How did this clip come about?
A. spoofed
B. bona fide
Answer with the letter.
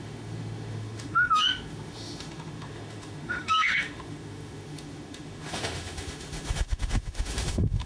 A